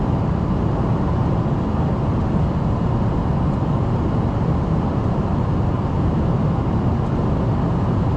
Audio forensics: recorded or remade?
recorded